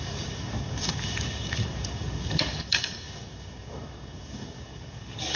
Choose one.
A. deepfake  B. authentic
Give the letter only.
A